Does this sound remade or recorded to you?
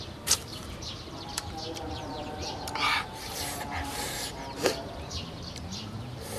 remade